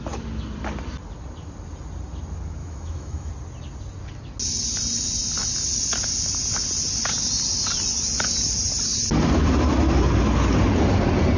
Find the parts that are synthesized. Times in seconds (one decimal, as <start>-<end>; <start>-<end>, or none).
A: 2.6-3.3